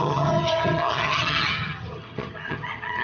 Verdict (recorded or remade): remade